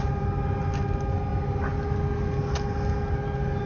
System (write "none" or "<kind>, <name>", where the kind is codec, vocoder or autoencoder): none